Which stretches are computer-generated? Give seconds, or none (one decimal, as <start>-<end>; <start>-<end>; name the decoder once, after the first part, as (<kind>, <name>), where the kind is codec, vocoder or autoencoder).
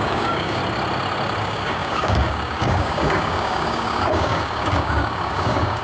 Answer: 0.0-0.6 (codec, DAC); 1.4-5.8